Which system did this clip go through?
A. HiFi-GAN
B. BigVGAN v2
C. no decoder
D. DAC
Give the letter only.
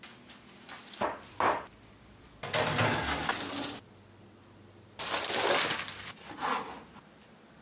C